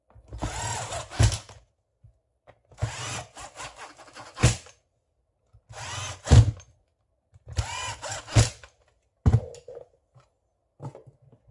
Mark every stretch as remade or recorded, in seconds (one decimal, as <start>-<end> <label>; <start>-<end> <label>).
0.0-11.5 recorded